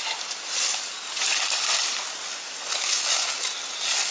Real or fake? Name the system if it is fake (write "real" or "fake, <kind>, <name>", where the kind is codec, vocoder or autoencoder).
real